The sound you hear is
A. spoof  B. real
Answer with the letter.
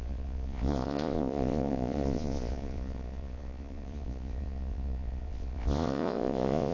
A